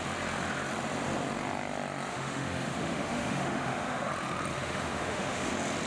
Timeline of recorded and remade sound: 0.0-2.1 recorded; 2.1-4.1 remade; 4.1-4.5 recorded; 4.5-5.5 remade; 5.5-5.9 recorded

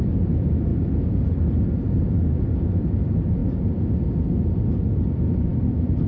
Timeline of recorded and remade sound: 0.0-6.1 recorded

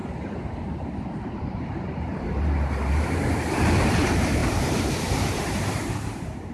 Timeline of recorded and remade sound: 0.0-3.9 recorded; 3.9-6.5 remade

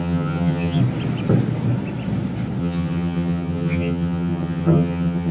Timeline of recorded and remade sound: 0.0-0.8 remade; 0.8-2.6 recorded; 2.6-5.3 remade

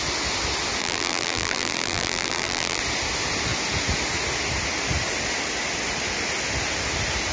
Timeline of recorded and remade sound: 0.0-0.8 recorded; 0.8-2.8 remade; 2.8-7.3 recorded

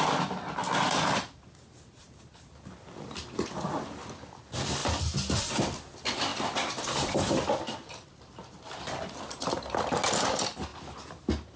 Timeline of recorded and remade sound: 0.0-11.6 recorded

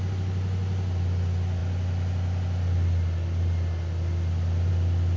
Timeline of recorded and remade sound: 0.0-5.2 recorded